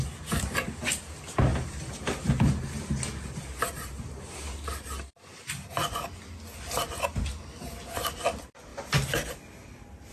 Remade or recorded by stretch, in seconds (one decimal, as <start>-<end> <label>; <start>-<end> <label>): 0.0-1.5 recorded; 1.5-5.1 remade; 5.1-10.1 recorded